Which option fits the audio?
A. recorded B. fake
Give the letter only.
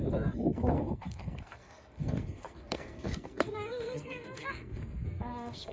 B